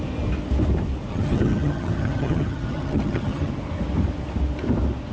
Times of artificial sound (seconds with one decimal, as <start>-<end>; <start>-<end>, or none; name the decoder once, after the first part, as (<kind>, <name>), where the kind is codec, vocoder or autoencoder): 1.1-3.5 (vocoder, HiFi-GAN)

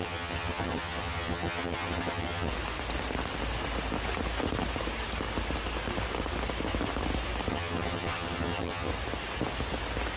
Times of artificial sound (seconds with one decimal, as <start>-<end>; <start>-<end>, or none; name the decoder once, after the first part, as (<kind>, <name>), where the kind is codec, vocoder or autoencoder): 0.0-2.5 (vocoder, HiFi-GAN); 7.5-8.9

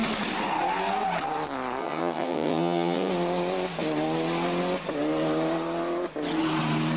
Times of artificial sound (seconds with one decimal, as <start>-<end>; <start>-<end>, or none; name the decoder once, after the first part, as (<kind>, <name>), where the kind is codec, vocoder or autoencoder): 1.8-3.1 (vocoder, HiFi-GAN)

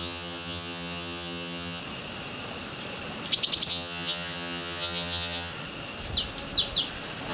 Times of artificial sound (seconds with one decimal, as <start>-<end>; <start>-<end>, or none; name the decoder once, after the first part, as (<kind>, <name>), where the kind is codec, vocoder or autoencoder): 0.0-1.8 (vocoder, HiFi-GAN); 3.7-5.5

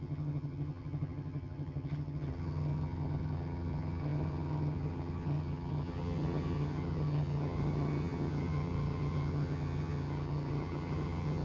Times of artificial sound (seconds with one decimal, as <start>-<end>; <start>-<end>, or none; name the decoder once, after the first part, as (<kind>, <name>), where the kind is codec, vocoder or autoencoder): 0.0-11.4 (vocoder, HiFi-GAN)

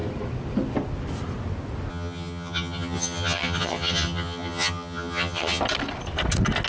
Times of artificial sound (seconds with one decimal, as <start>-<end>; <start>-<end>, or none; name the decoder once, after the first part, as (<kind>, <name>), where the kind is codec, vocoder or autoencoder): 1.9-5.6 (vocoder, HiFi-GAN)

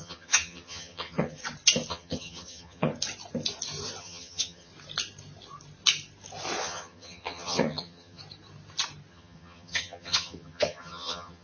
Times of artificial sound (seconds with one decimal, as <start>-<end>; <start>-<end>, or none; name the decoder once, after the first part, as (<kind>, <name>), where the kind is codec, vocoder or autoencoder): 0.0-1.4 (vocoder, HiFi-GAN); 1.9-2.9; 4.0-4.7; 6.6-8.2; 9.1-11.4